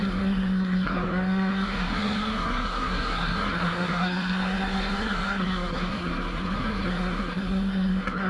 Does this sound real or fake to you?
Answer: fake